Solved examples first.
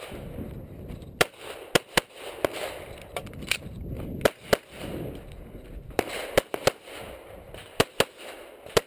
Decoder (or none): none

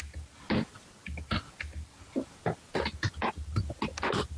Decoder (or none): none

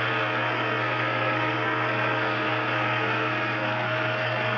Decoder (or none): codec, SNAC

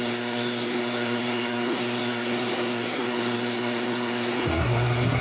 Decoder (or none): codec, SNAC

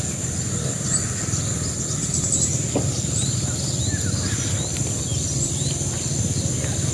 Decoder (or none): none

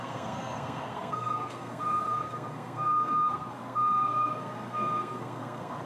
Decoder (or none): codec, SNAC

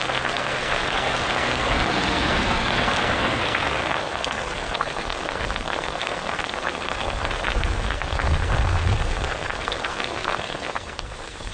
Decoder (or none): codec, SNAC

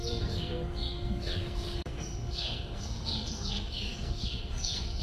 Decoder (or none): codec, SNAC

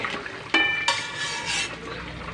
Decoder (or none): none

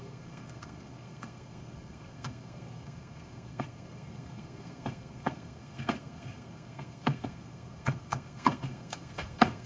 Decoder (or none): codec, SNAC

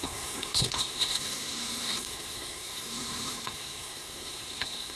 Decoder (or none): codec, SNAC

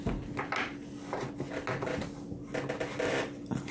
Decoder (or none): none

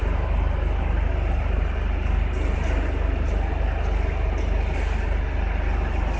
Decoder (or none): none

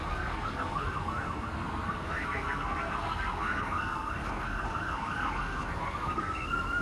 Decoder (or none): codec, SNAC